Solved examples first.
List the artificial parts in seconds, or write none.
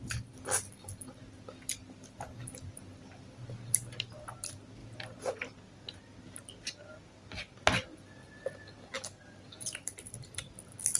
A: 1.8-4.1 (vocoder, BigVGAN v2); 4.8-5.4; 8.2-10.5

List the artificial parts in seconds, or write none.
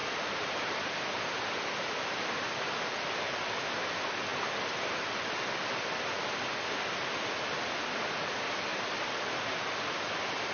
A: 0.0-0.8 (vocoder, BigVGAN v2); 8.7-9.7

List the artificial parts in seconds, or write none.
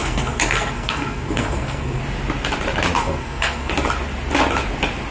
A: 0.0-2.0 (codec, SNAC); 3.0-3.7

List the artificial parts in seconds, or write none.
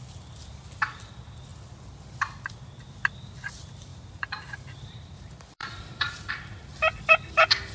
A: 3.9-6.3 (vocoder, BigVGAN v2)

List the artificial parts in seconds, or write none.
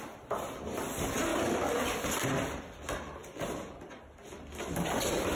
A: none